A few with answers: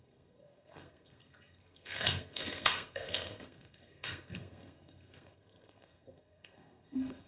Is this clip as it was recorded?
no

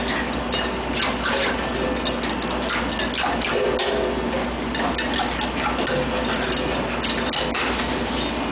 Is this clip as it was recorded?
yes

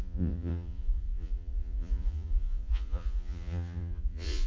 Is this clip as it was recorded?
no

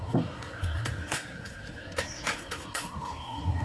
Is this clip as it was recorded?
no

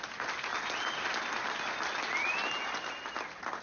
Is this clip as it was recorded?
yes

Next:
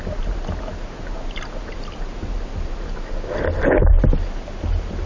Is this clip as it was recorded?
yes